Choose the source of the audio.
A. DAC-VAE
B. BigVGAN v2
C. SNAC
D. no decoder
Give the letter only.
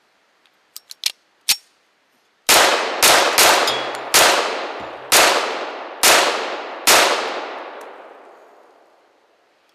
D